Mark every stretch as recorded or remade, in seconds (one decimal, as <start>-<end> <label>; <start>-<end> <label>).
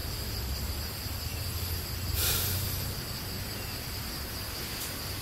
0.0-5.2 recorded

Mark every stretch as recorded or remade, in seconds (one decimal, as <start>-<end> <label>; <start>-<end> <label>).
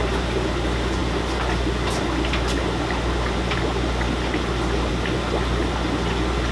0.0-6.5 recorded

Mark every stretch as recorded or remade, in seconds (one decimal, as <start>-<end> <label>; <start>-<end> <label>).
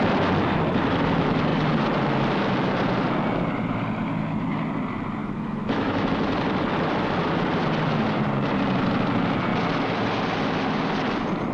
0.0-5.2 recorded; 5.2-6.1 remade; 6.1-11.5 recorded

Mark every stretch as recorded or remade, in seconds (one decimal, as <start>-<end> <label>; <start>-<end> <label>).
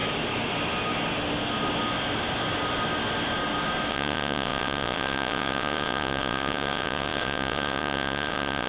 0.0-3.9 recorded; 3.9-8.7 remade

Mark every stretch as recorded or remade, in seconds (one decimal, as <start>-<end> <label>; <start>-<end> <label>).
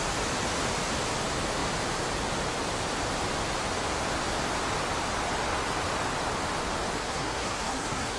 0.0-7.0 recorded; 7.0-8.2 remade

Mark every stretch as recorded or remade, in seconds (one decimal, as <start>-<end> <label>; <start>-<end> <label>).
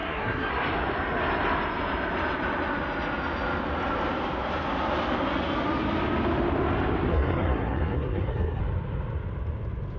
0.0-0.5 remade; 0.5-7.1 recorded; 7.1-8.6 remade; 8.6-10.0 recorded